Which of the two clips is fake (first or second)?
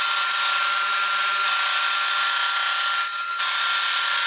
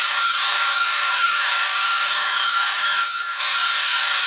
second